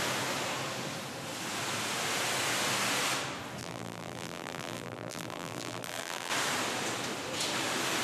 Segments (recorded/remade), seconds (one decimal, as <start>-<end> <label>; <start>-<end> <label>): 0.0-3.6 recorded; 3.6-6.3 remade; 6.3-8.0 recorded